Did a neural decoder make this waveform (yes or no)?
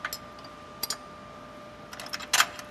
no